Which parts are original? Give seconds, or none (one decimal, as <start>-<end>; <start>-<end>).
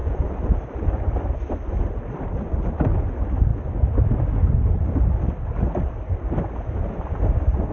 2.3-7.7